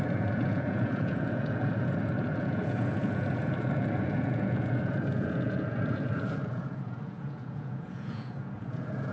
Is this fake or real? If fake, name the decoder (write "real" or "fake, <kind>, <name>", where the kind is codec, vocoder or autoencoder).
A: fake, vocoder, Vocos